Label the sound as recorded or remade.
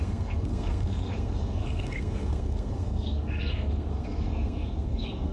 remade